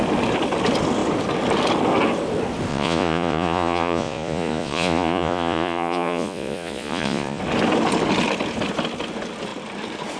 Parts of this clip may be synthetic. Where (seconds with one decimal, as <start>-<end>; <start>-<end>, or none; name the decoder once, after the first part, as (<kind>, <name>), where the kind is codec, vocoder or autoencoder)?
2.7-7.4 (vocoder, Vocos)